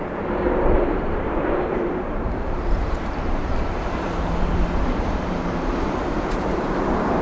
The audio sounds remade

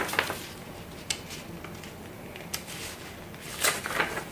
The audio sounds recorded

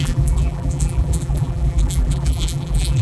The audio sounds remade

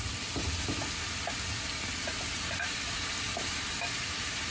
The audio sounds remade